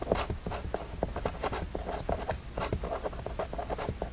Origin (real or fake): real